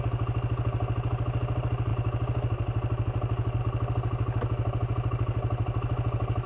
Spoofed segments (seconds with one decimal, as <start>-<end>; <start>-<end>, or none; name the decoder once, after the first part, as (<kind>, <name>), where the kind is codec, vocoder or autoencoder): none